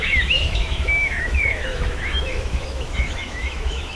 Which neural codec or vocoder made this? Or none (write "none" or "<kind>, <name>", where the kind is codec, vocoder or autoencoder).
autoencoder, DAC-VAE